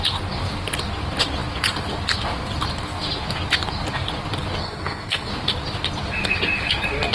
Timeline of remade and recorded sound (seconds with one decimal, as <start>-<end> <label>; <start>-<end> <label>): 0.0-4.6 recorded; 4.6-5.3 remade; 5.3-7.1 recorded